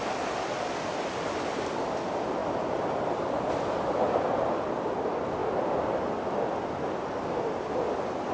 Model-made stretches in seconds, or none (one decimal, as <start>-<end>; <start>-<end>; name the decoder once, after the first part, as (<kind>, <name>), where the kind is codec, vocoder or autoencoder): none